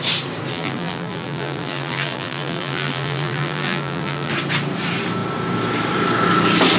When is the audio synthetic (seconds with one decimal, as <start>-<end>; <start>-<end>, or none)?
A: 0.5-4.3